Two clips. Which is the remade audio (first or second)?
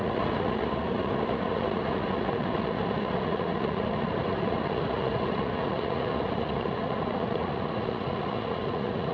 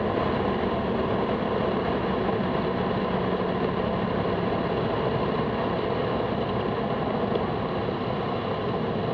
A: first